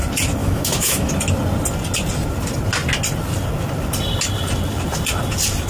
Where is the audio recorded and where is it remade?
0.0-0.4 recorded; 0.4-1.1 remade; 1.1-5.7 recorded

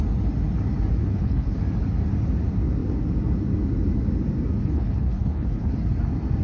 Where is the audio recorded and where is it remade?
0.0-1.0 recorded; 1.0-1.6 remade; 1.6-4.6 recorded; 4.6-5.7 remade; 5.7-6.4 recorded

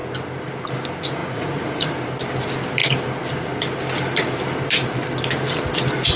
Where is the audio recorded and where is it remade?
0.0-1.2 recorded; 1.2-1.9 remade; 1.9-6.2 recorded

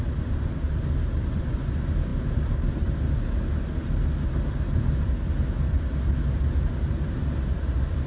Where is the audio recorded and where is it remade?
0.0-8.1 recorded

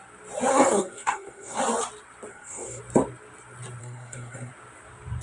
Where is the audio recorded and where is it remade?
0.0-0.5 recorded; 0.5-1.6 remade; 1.6-2.3 recorded; 2.3-2.8 remade; 2.8-3.8 recorded; 3.8-4.5 remade; 4.5-5.2 recorded